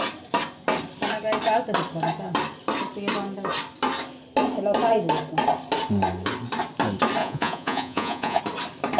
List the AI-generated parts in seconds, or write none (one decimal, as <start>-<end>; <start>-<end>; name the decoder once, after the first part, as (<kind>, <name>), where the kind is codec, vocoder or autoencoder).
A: 7.2-8.4 (vocoder, Vocos)